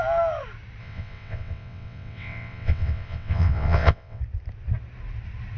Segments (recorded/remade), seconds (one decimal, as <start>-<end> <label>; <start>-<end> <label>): 0.0-0.8 recorded; 0.8-4.2 remade; 4.2-5.6 recorded